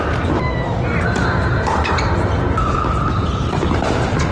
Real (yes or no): yes